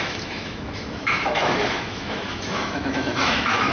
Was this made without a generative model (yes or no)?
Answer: no